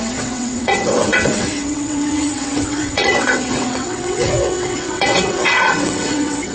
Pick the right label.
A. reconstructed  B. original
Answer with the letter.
A